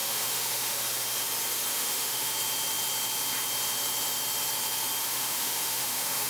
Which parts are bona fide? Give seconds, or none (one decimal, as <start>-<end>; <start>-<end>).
0.8-1.7; 2.3-5.0

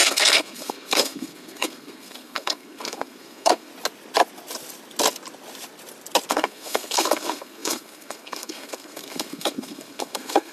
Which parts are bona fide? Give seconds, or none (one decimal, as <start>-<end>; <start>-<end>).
3.7-6.3